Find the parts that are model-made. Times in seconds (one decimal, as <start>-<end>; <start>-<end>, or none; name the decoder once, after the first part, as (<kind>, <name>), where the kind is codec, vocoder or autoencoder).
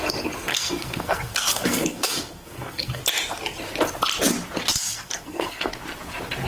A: 0.5-3.0 (codec, SNAC); 4.7-5.7